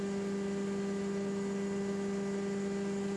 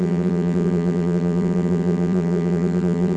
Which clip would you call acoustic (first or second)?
first